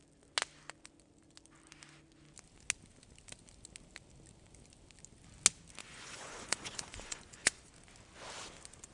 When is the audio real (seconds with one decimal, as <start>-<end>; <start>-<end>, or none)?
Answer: 0.0-5.8; 7.7-8.9